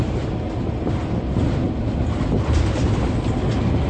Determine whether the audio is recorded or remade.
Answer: recorded